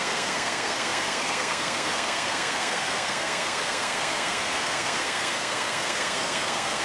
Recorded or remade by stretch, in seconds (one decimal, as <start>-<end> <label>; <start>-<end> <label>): 0.0-6.8 remade